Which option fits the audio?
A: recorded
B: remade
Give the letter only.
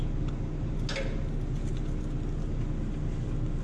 A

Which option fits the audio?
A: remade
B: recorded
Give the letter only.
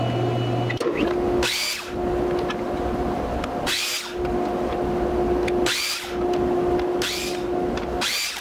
B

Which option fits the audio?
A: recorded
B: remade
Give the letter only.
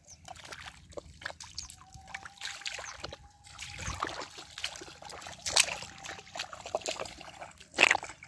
A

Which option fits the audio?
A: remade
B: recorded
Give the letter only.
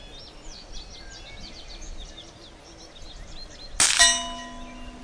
B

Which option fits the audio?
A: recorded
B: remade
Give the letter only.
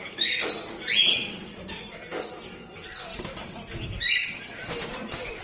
A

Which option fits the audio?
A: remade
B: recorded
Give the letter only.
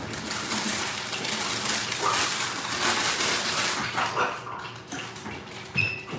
B